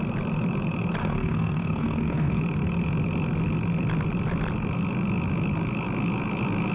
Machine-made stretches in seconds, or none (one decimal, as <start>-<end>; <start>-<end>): 1.0-2.4